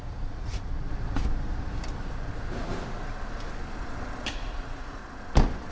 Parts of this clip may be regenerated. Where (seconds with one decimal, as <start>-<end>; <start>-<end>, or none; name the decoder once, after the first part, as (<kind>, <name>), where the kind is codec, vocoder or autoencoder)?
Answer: 0.0-0.9 (vocoder, Vocos); 4.3-5.0